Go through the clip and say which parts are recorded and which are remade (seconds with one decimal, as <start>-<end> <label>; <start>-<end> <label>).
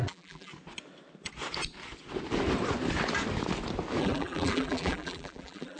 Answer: 0.0-0.5 remade; 0.5-4.0 recorded; 4.0-5.8 remade